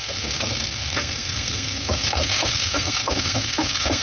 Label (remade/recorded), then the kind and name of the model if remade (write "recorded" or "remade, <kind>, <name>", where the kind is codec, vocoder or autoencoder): remade, codec, SNAC